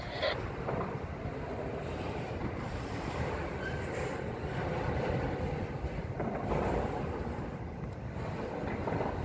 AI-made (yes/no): no